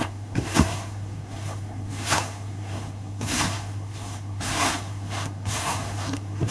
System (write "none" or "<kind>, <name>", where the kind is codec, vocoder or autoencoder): codec, SNAC